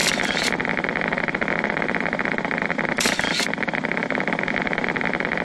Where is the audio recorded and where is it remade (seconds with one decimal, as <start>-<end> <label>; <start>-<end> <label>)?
0.0-5.4 recorded